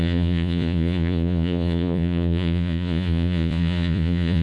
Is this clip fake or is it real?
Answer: fake